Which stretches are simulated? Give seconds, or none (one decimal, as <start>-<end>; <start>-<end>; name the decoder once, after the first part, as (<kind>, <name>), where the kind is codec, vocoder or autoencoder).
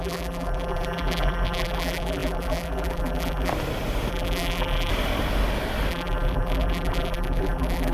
0.0-3.5 (vocoder, BigVGAN v2); 4.1-4.9; 5.9-7.9